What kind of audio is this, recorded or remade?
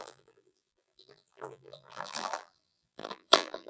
remade